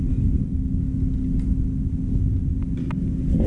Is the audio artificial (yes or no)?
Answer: no